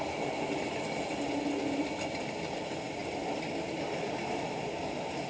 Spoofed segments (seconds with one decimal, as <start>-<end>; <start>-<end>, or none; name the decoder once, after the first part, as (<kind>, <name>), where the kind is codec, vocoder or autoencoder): none